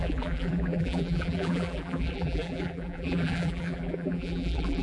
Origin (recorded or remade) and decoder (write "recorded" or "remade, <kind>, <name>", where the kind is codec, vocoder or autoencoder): remade, vocoder, BigVGAN v2